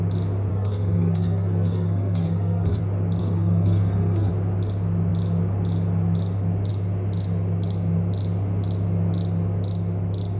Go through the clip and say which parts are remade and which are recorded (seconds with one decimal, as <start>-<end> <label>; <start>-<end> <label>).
0.0-0.5 recorded; 0.5-2.8 remade; 2.8-3.2 recorded; 3.2-4.3 remade; 4.3-10.4 recorded